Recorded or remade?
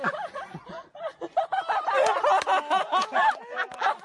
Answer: recorded